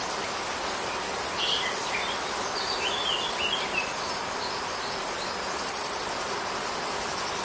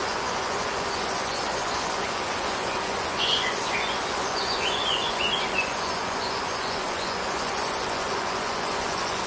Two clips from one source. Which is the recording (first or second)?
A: first